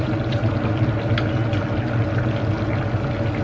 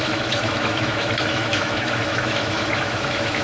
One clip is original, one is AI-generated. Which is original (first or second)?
first